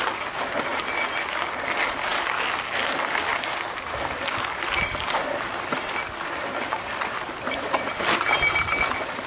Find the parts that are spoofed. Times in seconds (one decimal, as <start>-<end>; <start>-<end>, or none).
none